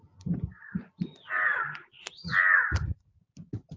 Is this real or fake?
real